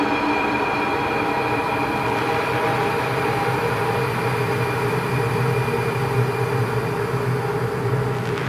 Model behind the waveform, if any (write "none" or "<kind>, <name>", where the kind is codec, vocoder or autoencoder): none